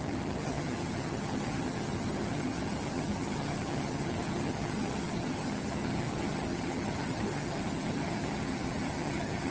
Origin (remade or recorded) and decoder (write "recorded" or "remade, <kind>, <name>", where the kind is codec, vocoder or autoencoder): remade, vocoder, HiFi-GAN